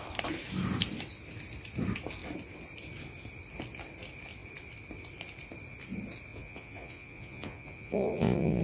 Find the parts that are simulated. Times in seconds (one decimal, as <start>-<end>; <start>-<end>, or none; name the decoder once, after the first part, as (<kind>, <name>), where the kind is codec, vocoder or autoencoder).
6.3-8.6 (vocoder, Vocos)